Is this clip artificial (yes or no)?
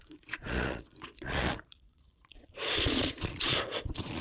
yes